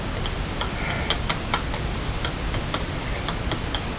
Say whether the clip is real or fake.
real